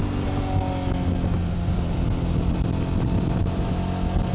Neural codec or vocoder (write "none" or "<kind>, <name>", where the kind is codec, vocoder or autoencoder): none